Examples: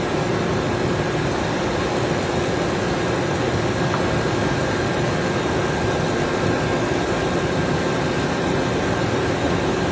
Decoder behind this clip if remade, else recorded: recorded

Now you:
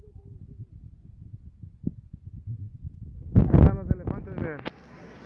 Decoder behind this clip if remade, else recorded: recorded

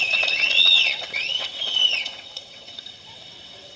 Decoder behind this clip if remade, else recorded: remade, vocoder, WaveNeXt